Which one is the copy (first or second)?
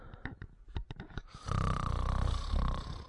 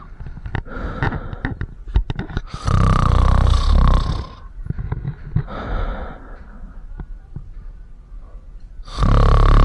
first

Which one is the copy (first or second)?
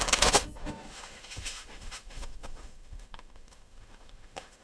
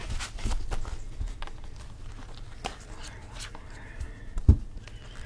first